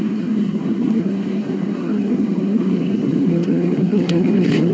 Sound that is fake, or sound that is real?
fake